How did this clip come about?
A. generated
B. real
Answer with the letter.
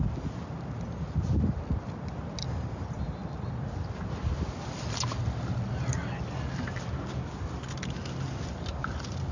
B